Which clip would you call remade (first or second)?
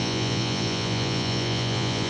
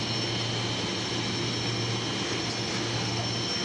first